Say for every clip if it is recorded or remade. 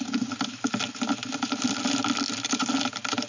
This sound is recorded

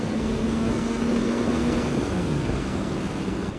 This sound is remade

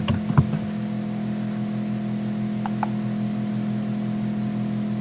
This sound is recorded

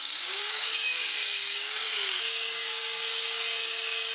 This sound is remade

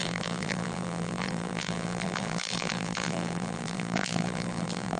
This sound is remade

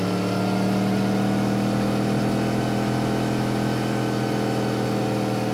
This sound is recorded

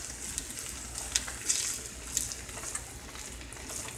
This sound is recorded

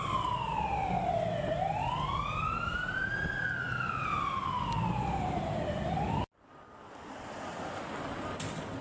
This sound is recorded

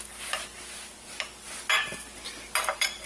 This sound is recorded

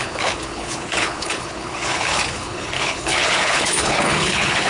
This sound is remade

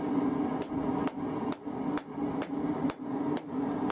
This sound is recorded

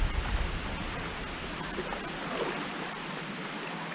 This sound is recorded